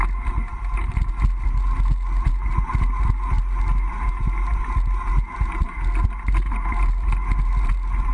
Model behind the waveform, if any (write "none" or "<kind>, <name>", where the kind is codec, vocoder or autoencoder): none